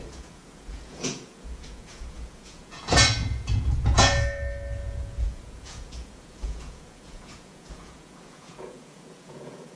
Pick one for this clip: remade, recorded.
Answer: remade